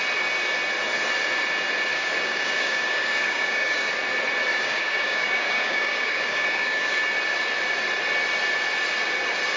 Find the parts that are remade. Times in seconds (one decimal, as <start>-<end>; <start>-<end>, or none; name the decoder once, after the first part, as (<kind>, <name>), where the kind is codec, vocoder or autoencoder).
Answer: 1.9-3.9 (codec, DAC); 4.5-7.0